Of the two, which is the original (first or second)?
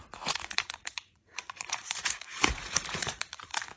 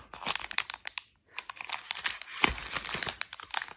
second